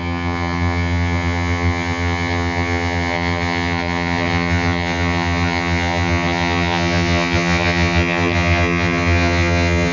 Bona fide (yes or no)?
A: no